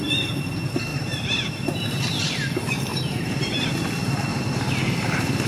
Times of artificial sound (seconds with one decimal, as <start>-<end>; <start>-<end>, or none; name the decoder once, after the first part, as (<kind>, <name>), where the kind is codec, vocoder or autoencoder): 0.9-2.0 (vocoder, BigVGAN v2); 2.9-3.7; 4.3-5.5